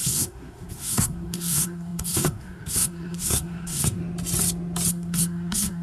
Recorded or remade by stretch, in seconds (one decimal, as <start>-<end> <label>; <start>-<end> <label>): 0.0-4.0 remade; 4.0-4.9 recorded; 4.9-5.8 remade